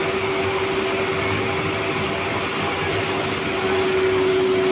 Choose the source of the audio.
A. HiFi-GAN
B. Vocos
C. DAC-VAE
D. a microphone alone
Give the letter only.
D